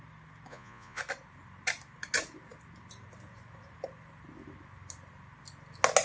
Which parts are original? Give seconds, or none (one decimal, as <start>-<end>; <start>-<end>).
0.0-0.5; 1.0-6.0

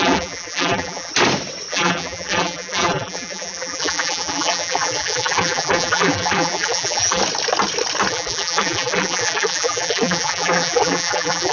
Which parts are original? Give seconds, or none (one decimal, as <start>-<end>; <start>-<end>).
1.1-1.7; 7.2-8.1

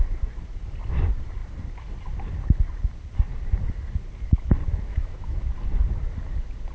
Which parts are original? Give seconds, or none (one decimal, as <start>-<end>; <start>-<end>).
0.0-4.9; 5.5-6.7

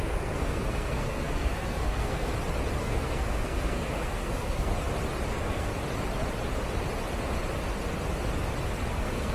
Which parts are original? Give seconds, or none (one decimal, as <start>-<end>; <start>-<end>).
2.3-2.8; 4.7-5.3; 5.7-8.9

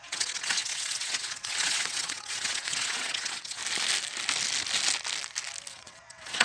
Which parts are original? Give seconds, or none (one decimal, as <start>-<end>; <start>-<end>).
3.6-5.7

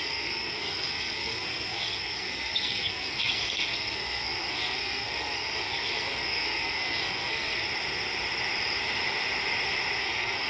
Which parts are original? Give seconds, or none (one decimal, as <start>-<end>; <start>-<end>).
7.6-10.0

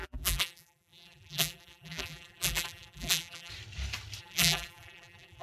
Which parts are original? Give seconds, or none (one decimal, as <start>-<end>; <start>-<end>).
3.5-4.2